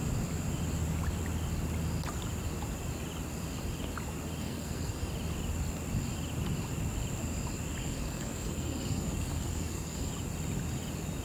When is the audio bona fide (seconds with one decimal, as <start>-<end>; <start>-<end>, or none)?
0.0-4.4; 5.1-7.8; 10.1-11.2